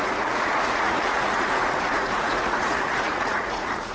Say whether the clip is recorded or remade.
remade